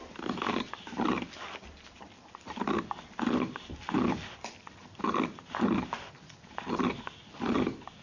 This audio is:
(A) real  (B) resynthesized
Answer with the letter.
A